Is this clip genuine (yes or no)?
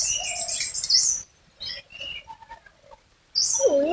yes